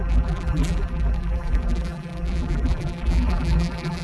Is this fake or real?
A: fake